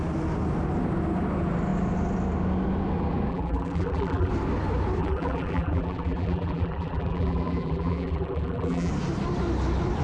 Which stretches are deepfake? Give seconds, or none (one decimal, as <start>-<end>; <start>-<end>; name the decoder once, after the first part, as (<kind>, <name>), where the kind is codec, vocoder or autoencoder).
3.3-4.3 (vocoder, BigVGAN v2); 5.0-8.9

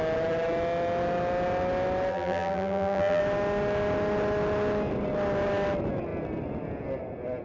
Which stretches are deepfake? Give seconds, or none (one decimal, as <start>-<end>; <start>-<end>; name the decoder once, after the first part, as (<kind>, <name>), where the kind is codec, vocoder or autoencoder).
2.1-3.2 (vocoder, BigVGAN v2)

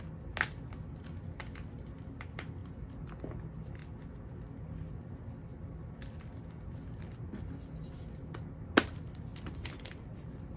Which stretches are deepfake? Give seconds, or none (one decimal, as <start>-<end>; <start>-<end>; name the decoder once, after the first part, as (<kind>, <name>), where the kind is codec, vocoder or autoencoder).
2.6-3.2 (vocoder, BigVGAN v2); 9.3-10.6

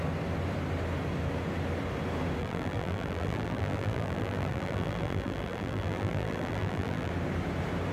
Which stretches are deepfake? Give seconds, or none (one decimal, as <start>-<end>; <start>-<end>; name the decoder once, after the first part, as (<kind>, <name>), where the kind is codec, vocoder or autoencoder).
2.4-7.1 (vocoder, BigVGAN v2)

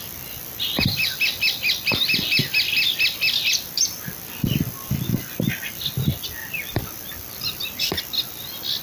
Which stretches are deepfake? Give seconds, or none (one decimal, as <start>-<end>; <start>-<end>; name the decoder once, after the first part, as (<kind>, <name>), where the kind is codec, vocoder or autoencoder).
6.4-8.0 (vocoder, BigVGAN v2)

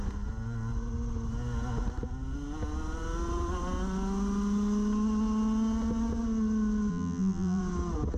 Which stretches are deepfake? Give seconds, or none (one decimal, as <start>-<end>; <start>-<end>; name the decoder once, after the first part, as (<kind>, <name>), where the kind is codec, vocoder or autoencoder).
6.9-7.6 (vocoder, BigVGAN v2)

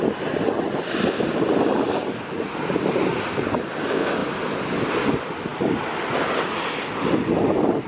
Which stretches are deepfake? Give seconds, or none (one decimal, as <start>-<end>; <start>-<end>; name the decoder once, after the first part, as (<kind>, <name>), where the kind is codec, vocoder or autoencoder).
3.1-3.7 (vocoder, BigVGAN v2)

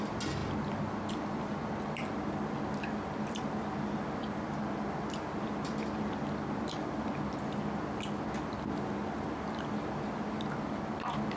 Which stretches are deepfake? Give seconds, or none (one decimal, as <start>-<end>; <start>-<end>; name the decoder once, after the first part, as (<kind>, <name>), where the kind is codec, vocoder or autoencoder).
none